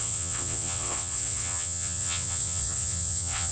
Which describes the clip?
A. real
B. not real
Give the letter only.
B